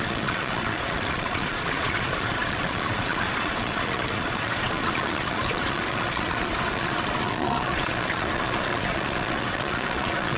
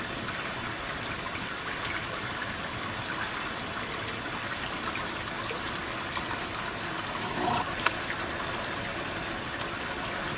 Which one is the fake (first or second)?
first